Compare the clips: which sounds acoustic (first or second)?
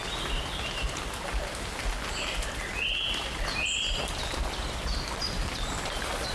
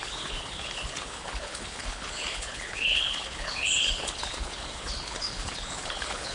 first